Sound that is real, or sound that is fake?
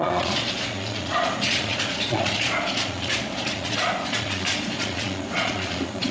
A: fake